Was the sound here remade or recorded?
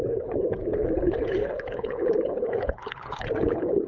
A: remade